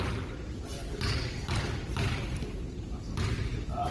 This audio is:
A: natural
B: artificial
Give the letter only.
A